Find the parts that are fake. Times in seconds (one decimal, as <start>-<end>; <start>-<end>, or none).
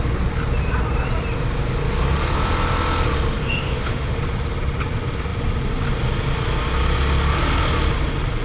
3.4-4.2